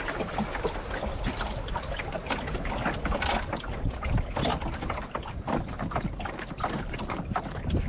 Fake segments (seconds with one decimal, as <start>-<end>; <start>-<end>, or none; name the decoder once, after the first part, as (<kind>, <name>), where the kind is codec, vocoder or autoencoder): none